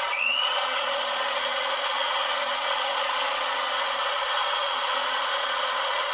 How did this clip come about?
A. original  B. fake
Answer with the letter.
B